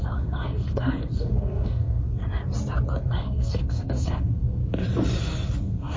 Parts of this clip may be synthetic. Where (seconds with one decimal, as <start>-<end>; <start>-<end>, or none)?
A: 0.0-2.2; 3.0-4.6; 5.6-6.0

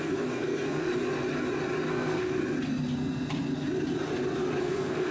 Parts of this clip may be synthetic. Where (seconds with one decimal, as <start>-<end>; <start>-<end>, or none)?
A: 0.0-0.9; 1.9-2.4; 4.6-5.1

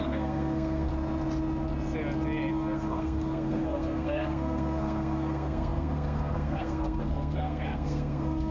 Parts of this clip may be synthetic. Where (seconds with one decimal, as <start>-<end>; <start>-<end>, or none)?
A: 0.0-0.9; 2.5-8.5

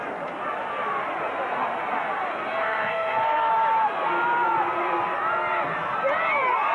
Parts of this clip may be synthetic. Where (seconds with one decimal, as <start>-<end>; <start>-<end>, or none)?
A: 2.6-3.5

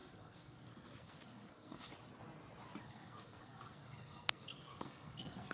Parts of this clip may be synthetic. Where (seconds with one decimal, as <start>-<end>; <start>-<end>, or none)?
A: 0.0-1.9; 2.8-5.5

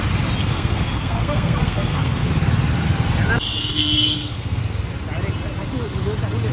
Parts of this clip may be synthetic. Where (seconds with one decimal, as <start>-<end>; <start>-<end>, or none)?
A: 0.4-2.3; 3.6-4.6